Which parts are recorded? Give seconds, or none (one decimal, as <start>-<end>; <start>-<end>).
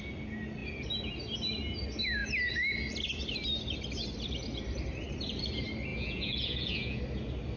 0.0-5.9; 7.0-7.6